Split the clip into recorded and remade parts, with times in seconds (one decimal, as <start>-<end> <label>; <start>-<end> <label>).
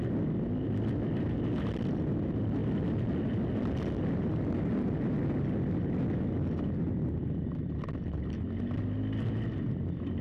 0.0-10.2 recorded